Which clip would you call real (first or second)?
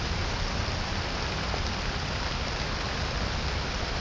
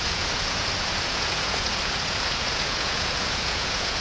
first